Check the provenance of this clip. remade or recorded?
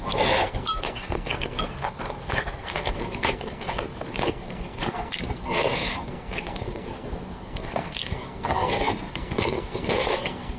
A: remade